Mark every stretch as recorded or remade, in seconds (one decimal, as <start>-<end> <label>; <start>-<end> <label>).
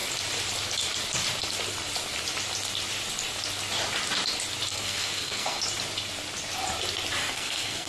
0.0-4.7 recorded; 4.7-5.6 remade; 5.6-7.2 recorded; 7.2-7.9 remade